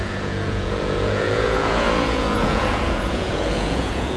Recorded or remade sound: remade